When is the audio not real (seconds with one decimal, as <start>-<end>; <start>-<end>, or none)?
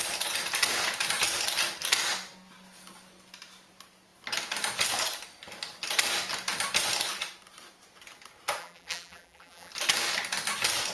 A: 8.6-9.7